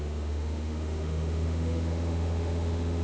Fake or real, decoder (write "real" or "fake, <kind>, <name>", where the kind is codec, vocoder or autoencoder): fake, autoencoder, DAC-VAE